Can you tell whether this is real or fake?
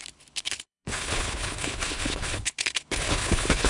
fake